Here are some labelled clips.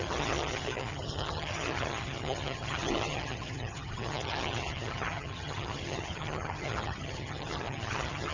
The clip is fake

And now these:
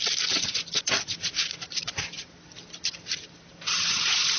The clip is real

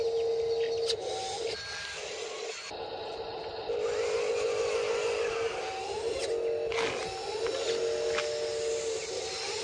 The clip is real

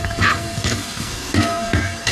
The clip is fake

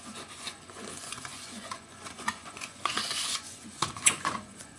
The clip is fake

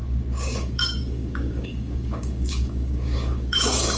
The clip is fake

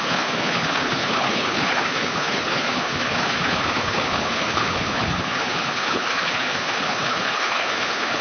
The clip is fake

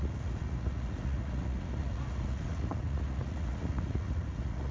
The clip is fake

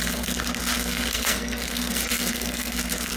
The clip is fake